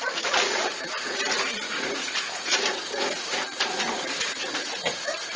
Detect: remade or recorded remade